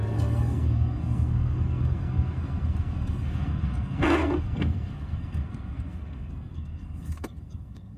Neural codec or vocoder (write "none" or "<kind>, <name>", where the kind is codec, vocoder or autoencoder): codec, SNAC